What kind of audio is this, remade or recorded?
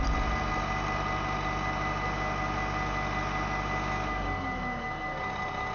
recorded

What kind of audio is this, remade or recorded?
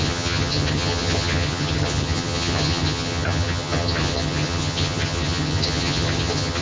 remade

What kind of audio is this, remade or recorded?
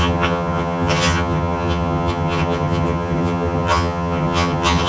remade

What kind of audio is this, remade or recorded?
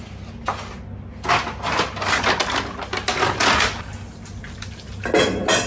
recorded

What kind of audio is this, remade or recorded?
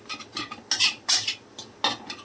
recorded